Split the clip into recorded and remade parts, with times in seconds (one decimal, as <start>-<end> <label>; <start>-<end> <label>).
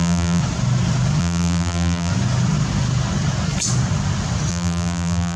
0.0-0.4 remade; 0.4-1.2 recorded; 1.2-2.1 remade; 2.1-4.5 recorded; 4.5-5.4 remade